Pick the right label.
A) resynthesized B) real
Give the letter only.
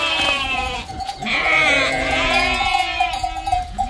A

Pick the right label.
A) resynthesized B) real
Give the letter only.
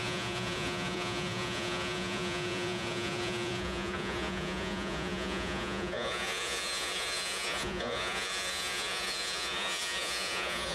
A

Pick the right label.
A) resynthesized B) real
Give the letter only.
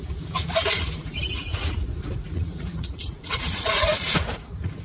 A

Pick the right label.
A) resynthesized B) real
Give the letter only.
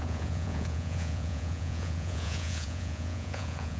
A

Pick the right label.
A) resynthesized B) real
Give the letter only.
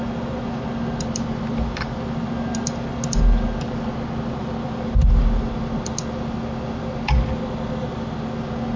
B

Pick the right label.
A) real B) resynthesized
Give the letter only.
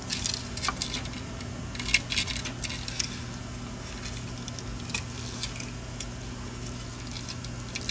A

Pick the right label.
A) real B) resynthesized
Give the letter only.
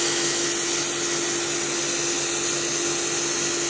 A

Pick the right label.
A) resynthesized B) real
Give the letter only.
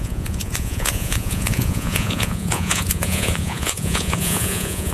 A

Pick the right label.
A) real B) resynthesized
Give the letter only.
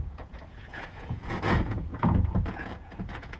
B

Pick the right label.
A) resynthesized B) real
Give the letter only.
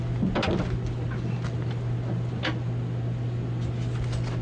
B